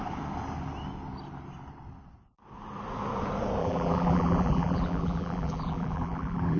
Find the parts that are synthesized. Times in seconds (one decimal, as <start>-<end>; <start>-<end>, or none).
3.6-6.6